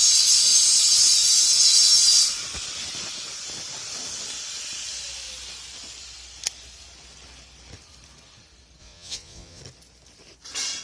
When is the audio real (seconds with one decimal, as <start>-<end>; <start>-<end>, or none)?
0.0-8.8; 9.6-10.8